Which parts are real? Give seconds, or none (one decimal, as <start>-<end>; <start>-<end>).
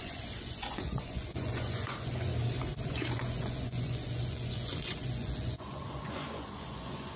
2.3-2.8